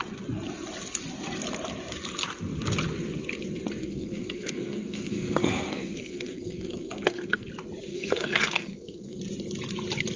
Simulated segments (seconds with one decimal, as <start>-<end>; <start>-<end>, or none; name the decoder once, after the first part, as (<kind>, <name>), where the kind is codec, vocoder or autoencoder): 3.8-7.5 (codec, SNAC); 7.9-9.2